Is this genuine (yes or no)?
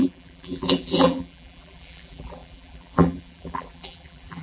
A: no